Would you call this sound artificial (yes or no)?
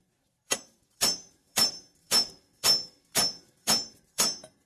yes